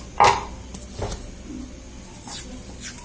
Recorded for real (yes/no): yes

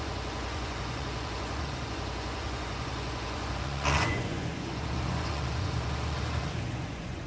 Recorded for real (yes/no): no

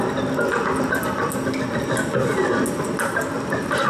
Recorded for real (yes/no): yes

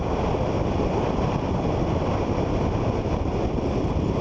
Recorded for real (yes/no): yes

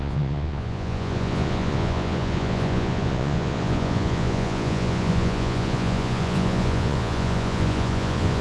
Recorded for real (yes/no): no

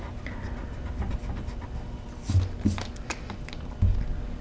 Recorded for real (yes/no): yes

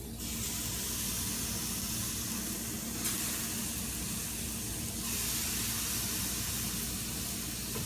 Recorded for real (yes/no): yes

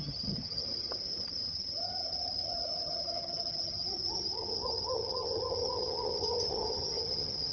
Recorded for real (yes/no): no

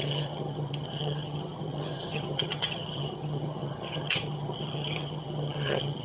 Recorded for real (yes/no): no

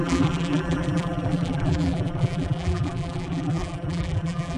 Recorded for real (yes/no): no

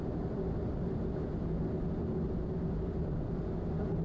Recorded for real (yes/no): yes